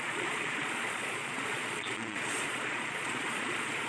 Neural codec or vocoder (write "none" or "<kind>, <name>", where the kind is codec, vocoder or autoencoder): vocoder, Vocos